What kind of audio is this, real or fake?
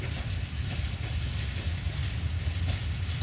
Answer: real